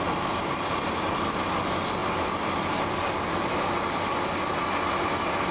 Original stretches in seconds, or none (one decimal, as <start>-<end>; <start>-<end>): 0.0-5.5

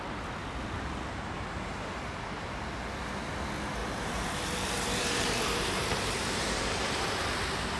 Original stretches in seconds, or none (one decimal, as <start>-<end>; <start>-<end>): 0.0-3.8; 7.3-7.8

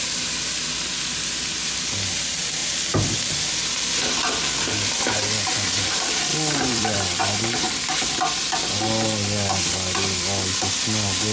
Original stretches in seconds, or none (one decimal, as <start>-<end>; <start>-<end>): 0.0-2.6; 4.0-6.3; 7.2-11.3

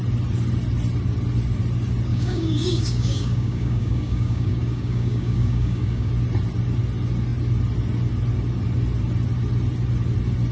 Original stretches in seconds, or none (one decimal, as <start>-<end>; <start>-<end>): 0.0-2.1; 6.1-10.5

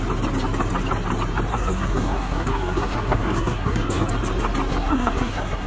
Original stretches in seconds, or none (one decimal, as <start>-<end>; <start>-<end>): 0.0-1.5; 4.1-4.7